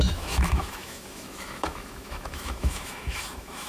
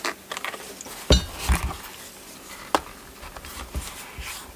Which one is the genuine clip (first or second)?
second